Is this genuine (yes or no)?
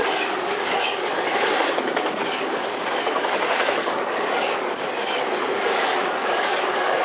no